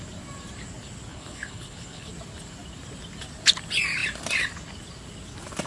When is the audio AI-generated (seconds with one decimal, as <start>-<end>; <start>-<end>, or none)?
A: 1.1-2.1